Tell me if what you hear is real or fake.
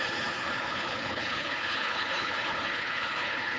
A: fake